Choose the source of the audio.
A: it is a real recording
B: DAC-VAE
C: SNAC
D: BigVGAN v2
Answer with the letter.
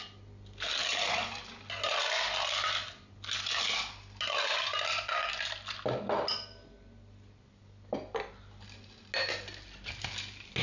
A